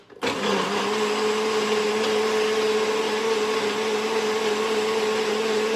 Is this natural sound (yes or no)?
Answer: yes